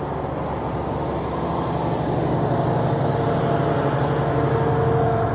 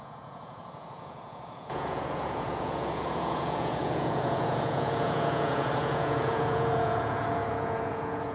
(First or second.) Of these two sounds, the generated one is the second